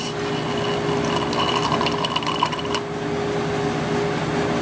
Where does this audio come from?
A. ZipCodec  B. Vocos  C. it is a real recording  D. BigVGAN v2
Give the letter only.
C